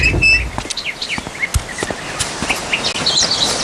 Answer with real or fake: real